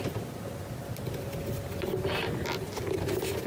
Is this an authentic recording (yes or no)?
yes